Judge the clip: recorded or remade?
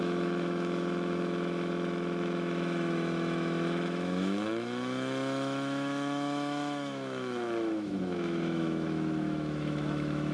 remade